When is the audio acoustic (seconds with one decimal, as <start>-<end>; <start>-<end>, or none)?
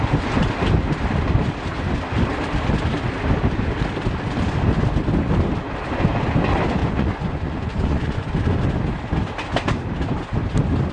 0.0-6.8; 8.3-10.9